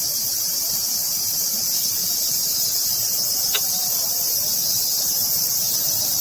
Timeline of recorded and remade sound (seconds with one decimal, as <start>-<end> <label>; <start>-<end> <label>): 0.0-6.2 recorded